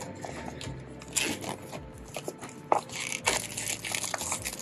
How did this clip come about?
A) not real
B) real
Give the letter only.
B